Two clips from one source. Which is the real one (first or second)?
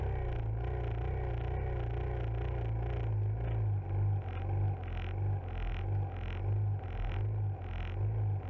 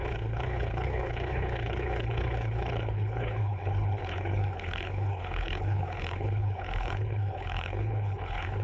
first